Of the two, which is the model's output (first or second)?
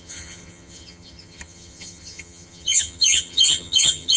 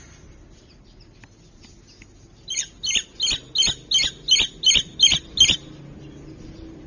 first